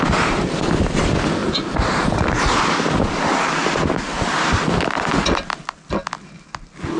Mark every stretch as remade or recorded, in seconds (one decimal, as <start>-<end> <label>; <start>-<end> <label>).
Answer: 0.0-7.0 recorded